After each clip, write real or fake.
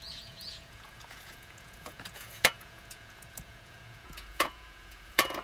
fake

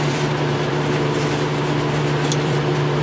fake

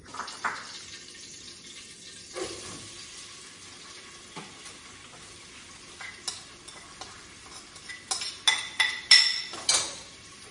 real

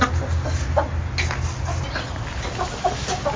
real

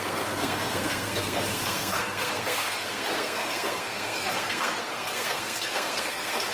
fake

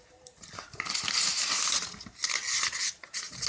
real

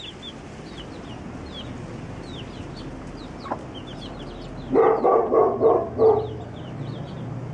real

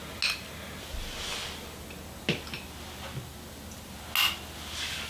real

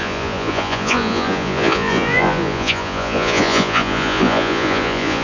fake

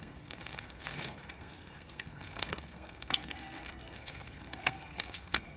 fake